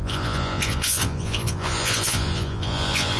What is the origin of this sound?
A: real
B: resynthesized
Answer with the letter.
B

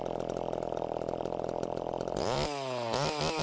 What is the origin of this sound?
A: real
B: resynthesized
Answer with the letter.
A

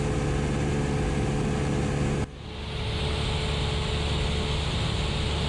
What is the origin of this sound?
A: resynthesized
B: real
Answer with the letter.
B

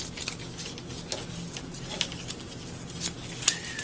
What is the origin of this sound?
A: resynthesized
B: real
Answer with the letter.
B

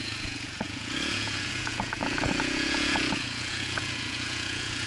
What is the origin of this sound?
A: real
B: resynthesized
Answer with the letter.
B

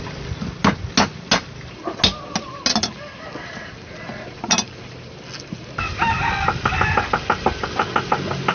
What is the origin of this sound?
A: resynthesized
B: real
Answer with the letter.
B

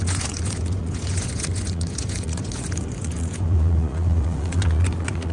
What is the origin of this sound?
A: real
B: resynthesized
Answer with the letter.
B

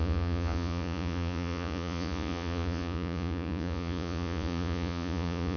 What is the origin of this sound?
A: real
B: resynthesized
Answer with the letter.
B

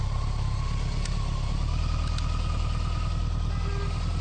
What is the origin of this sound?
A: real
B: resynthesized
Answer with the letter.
A